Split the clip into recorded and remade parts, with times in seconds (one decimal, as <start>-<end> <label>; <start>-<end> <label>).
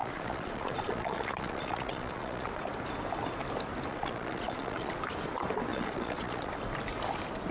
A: 0.0-2.5 remade; 2.5-3.9 recorded; 3.9-4.9 remade; 4.9-5.7 recorded; 5.7-6.5 remade; 6.5-7.5 recorded